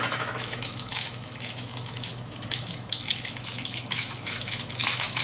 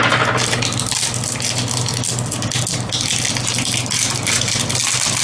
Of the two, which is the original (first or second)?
second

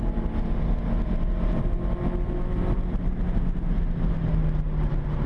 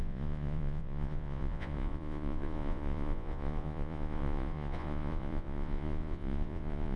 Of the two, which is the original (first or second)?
first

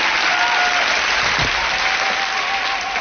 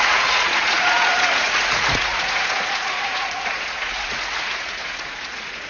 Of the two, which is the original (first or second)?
first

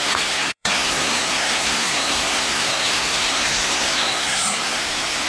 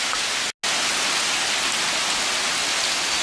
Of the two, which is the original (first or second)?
second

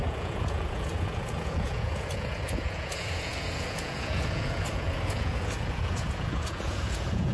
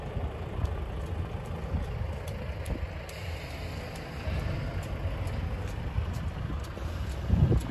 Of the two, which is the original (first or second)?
second